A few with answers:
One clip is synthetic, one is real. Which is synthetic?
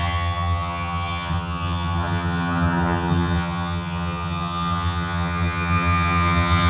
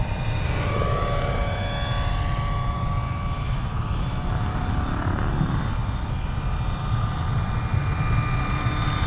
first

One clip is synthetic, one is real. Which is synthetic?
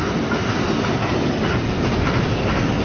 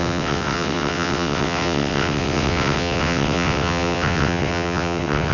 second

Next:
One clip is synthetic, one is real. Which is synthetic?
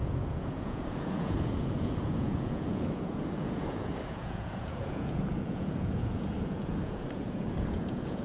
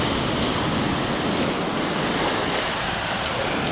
first